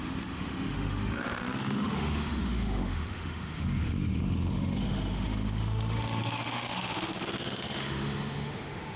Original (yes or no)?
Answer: no